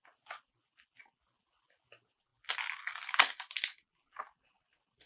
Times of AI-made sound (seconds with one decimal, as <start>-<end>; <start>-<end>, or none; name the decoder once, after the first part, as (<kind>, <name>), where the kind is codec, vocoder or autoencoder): none